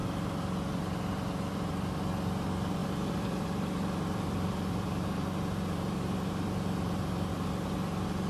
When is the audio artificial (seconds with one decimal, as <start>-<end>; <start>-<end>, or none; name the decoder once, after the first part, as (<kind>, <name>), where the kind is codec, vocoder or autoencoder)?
0.0-2.0 (vocoder, BigVGAN v2); 2.8-7.3

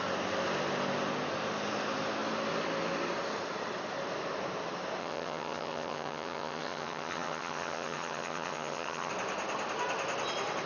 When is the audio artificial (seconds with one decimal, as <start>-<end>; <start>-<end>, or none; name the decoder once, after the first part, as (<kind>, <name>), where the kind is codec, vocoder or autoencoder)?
5.0-9.1 (vocoder, HiFi-GAN)

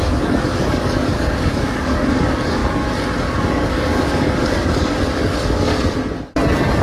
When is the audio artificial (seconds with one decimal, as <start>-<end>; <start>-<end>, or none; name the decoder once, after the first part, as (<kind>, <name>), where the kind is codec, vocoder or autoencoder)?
0.0-2.6 (codec, DAC); 3.4-5.7

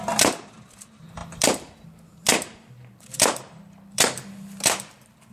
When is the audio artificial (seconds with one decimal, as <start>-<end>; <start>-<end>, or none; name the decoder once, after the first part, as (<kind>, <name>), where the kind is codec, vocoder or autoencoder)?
0.0-5.3 (vocoder, BigVGAN v2)

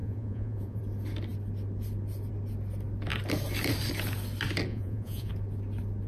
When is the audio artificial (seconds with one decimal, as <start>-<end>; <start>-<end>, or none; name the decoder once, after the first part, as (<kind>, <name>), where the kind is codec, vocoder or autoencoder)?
0.0-0.8 (vocoder, Vocos); 4.7-5.3

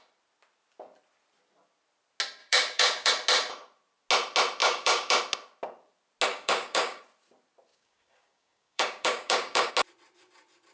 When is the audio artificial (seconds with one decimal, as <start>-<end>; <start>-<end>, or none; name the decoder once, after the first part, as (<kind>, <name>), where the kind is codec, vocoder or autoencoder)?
2.4-3.1 (codec, DAC); 4.6-5.2; 6.3-7.0; 7.7-9.7

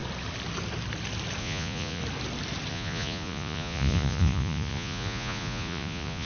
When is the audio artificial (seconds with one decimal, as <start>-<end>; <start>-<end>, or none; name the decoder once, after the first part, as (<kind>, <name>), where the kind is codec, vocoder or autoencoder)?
1.4-2.0 (vocoder, Vocos); 2.7-6.2

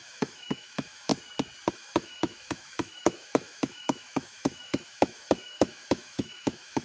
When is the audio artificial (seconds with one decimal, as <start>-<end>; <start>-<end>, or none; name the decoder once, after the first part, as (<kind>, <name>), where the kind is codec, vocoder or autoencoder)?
0.0-1.1 (autoencoder, DAC-VAE); 1.7-6.8